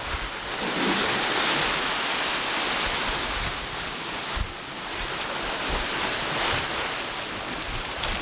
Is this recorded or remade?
recorded